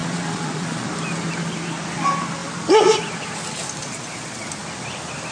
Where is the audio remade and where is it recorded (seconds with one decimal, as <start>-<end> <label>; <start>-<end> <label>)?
0.0-0.9 remade; 0.9-3.8 recorded; 3.8-4.5 remade; 4.5-5.3 recorded